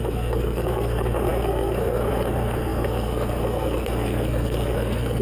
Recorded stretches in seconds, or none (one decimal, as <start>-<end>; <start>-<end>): none